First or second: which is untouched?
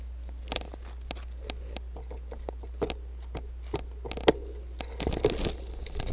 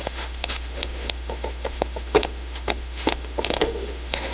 first